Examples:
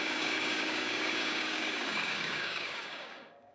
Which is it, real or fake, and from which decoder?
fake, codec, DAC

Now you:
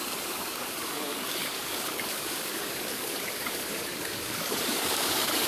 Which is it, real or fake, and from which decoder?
fake, codec, DAC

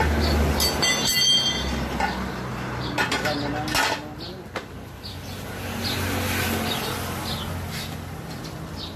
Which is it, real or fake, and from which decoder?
real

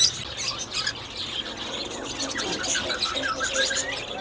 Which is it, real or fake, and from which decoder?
real